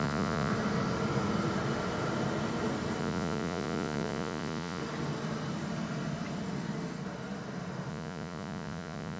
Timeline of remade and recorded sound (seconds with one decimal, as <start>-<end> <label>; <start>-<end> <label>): 0.0-0.5 remade; 0.5-3.0 recorded; 3.0-4.8 remade; 4.8-7.9 recorded; 7.9-9.2 remade